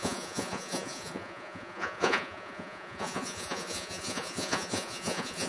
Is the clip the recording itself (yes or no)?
no